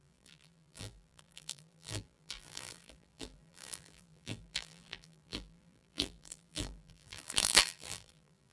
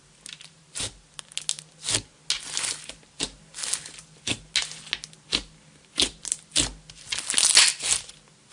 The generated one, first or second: first